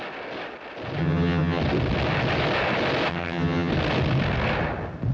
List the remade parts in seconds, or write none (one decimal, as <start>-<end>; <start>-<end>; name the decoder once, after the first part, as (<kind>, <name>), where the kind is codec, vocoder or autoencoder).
1.0-1.6 (vocoder, HiFi-GAN); 3.1-3.7